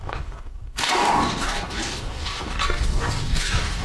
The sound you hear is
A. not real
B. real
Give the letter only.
A